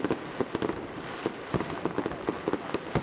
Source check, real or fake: real